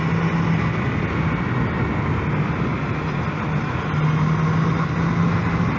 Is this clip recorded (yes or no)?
yes